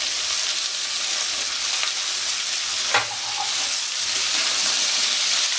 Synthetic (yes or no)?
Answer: yes